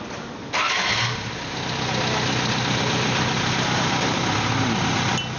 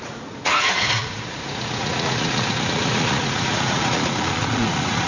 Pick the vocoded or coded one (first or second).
second